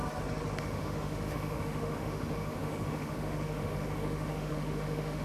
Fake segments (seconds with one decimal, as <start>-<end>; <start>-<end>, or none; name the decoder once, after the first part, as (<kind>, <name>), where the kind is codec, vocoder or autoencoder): 0.6-5.2 (autoencoder, DAC-VAE)